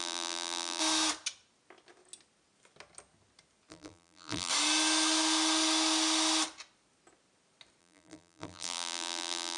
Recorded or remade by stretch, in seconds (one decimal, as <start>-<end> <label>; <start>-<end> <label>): 0.0-0.8 remade; 0.8-3.7 recorded; 3.7-4.5 remade; 4.5-7.8 recorded; 7.8-9.6 remade